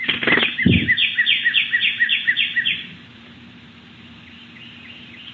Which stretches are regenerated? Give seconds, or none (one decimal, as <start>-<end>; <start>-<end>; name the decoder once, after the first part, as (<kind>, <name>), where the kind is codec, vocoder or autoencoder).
1.0-4.2 (vocoder, BigVGAN v2)